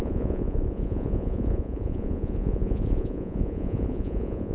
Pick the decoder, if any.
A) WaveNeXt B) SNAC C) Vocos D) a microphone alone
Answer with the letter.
C